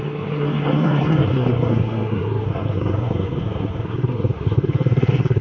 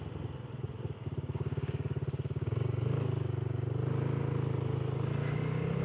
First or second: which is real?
second